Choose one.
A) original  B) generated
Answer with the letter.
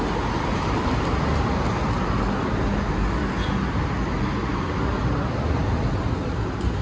A